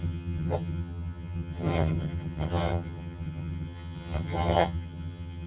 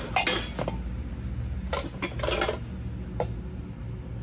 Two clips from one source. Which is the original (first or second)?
second